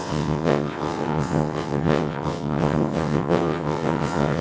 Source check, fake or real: fake